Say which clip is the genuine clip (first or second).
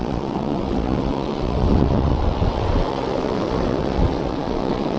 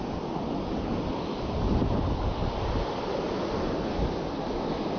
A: second